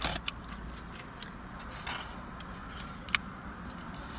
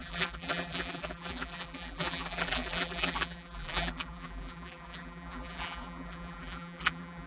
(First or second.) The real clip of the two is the first